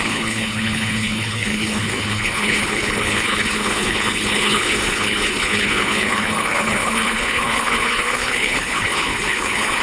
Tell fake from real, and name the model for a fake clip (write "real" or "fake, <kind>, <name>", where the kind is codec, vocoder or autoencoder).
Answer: fake, codec, HILCodec